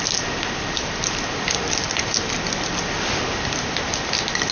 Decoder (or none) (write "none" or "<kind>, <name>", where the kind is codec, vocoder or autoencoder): none